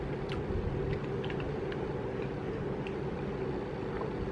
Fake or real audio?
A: real